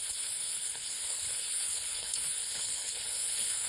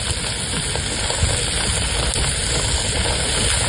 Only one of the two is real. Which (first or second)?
second